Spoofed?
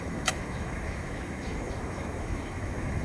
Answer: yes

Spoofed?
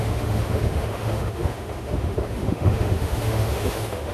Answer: yes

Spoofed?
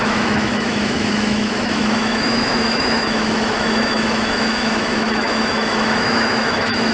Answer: yes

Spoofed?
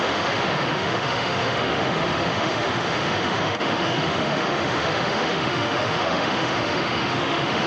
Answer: yes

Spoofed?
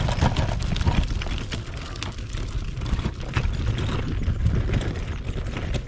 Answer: no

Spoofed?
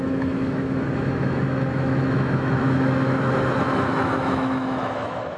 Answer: yes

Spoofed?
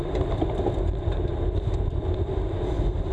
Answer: no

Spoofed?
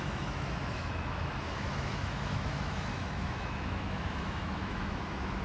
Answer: yes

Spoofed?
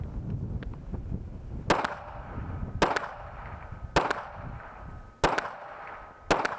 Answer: no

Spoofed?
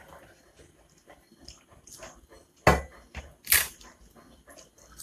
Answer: no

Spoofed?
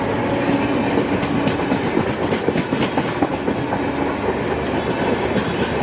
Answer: no